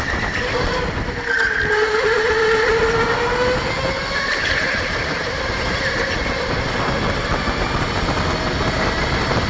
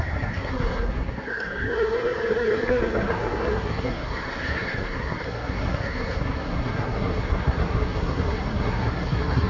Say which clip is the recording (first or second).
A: first